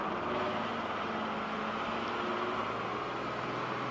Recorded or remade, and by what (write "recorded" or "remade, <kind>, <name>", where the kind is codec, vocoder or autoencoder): recorded